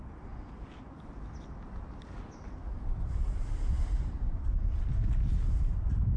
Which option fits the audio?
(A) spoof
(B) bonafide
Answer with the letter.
B